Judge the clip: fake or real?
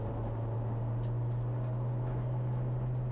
real